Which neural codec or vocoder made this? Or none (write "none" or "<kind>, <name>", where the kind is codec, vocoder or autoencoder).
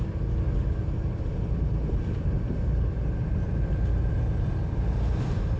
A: none